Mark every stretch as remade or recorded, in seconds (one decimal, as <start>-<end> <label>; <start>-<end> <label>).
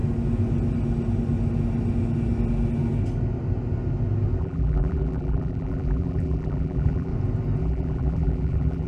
0.0-4.4 recorded; 4.4-7.1 remade; 7.1-7.6 recorded; 7.6-8.9 remade